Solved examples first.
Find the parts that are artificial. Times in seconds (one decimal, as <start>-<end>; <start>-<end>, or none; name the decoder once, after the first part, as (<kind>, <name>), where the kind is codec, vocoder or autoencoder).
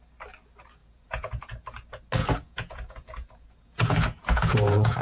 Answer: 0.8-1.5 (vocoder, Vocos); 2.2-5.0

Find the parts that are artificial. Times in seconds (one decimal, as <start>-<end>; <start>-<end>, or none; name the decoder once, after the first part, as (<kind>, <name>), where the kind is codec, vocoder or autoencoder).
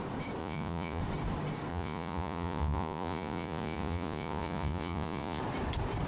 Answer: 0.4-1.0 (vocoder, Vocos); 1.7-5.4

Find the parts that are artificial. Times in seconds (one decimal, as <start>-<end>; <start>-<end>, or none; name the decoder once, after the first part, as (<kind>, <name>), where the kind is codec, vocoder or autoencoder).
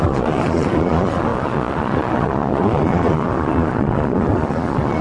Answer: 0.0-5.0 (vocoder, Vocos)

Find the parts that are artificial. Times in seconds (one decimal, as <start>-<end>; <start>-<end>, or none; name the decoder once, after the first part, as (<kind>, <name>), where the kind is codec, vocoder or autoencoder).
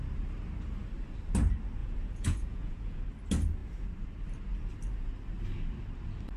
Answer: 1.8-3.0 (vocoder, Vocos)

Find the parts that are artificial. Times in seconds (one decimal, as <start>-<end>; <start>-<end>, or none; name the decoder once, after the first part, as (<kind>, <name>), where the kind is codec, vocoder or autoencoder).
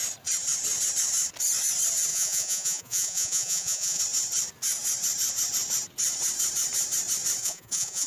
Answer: 2.1-4.0 (vocoder, Vocos); 7.4-8.1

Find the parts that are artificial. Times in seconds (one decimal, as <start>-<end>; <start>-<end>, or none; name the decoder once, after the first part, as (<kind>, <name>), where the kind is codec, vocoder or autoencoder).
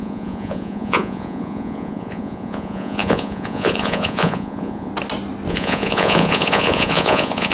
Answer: 0.0-4.9 (vocoder, Vocos); 5.5-7.5